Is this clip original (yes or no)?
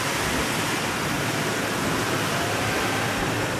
no